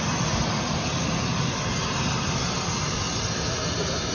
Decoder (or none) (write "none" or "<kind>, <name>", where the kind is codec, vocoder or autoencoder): none